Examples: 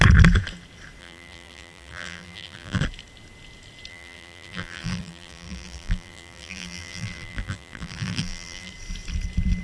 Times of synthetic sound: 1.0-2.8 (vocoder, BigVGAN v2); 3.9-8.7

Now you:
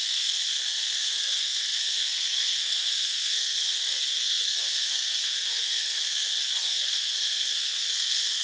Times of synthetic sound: 0.0-8.4 (codec, SNAC)

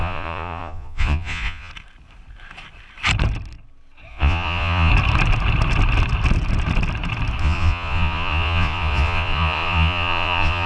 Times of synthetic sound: 0.0-1.7 (vocoder, Vocos); 4.1-4.9; 7.4-10.7

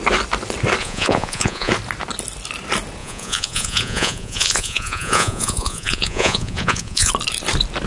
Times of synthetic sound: 0.8-1.7 (vocoder, Vocos); 3.0-7.1

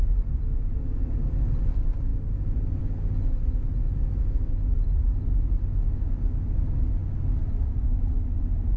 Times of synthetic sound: none

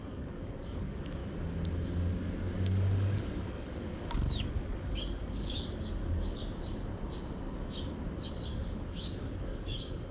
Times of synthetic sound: 0.0-1.2 (codec, DAC); 2.7-6.4; 8.3-10.1